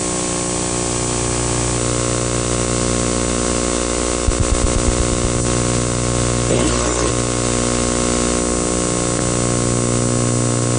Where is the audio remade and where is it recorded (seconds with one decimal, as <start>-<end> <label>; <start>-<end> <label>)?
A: 0.0-6.5 recorded; 6.5-7.1 remade; 7.1-10.8 recorded